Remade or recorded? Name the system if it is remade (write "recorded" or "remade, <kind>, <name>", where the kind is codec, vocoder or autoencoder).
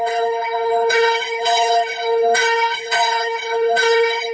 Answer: remade, codec, HILCodec